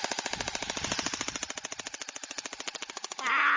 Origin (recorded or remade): recorded